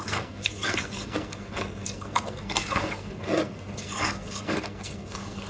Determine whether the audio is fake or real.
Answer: fake